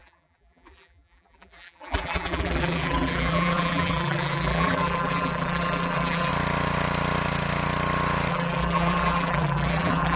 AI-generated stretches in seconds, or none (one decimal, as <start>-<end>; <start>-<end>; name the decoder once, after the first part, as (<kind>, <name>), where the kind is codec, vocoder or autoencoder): 0.0-6.3 (vocoder, BigVGAN v2); 8.3-10.2